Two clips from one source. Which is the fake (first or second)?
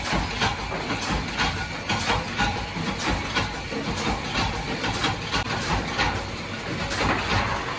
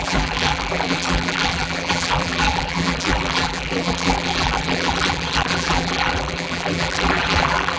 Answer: second